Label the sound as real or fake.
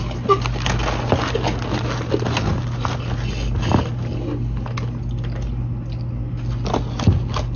real